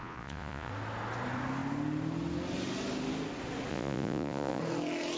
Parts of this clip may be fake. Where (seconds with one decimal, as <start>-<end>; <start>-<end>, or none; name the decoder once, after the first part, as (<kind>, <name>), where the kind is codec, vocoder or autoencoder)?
0.0-0.7 (vocoder, Vocos); 3.7-4.6